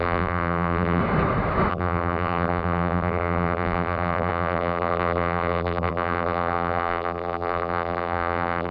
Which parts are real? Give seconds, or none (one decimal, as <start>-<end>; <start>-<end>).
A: 1.0-1.7